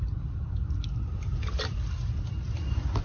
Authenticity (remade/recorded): recorded